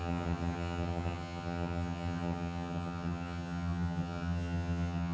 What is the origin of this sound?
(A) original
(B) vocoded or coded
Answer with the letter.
B